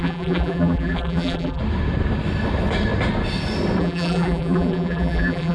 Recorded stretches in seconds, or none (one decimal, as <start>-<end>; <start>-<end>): 1.6-3.8